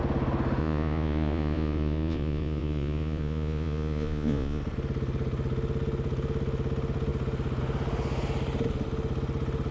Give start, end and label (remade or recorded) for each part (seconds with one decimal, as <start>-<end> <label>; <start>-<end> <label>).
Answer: 0.0-0.6 recorded; 0.6-4.6 remade; 4.6-9.7 recorded